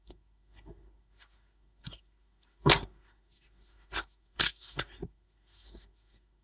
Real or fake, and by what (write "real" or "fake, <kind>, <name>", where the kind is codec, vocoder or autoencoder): fake, codec, SNAC